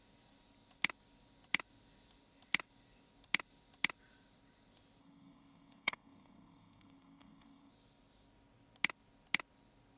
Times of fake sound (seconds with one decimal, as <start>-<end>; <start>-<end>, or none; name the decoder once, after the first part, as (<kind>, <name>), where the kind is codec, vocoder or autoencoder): 5.0-7.7 (codec, SNAC)